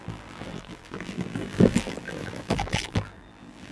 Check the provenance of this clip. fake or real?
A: fake